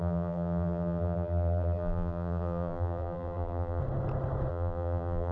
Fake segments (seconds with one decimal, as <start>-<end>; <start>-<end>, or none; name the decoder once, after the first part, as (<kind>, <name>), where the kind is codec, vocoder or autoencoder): 0.0-3.8 (vocoder, BigVGAN v2); 4.5-5.3